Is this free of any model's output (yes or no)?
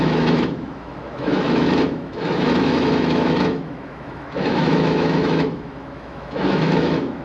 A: no